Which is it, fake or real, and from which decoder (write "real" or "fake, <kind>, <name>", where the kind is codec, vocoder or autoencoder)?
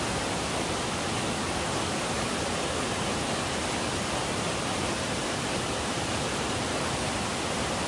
real